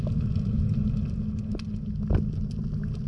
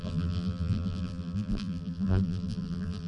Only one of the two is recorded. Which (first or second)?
first